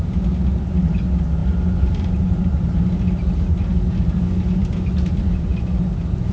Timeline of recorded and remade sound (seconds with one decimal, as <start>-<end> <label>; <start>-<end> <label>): 0.0-6.3 recorded

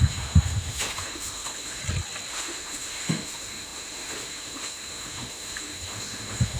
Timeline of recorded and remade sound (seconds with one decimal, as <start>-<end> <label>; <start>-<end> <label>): 0.0-1.8 remade; 1.8-2.3 recorded; 2.3-6.6 remade

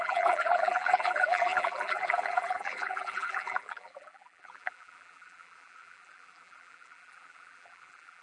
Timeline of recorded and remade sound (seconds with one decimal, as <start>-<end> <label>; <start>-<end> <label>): 0.0-8.2 remade